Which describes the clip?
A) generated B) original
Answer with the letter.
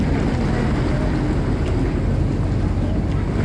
B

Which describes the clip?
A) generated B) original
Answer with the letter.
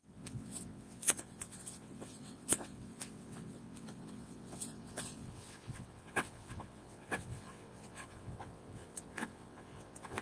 A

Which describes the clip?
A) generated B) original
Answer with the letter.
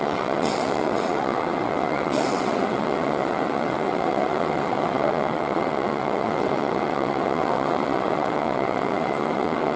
A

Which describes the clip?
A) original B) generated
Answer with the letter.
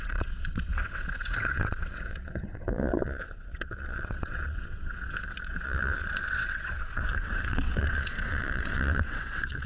B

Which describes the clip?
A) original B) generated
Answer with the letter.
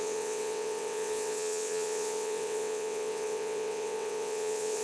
B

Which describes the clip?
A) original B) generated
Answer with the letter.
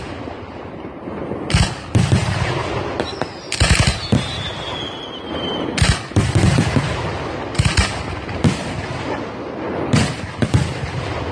A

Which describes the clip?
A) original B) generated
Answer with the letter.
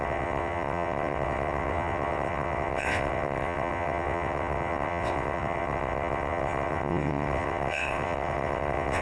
B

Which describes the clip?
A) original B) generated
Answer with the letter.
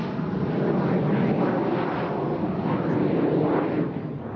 A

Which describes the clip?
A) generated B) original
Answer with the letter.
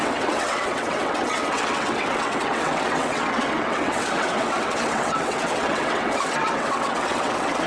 A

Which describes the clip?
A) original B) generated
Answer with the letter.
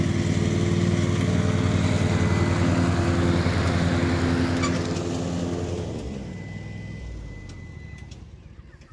A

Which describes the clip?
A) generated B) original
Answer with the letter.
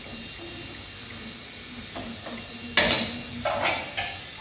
B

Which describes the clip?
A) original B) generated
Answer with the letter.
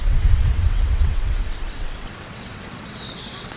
B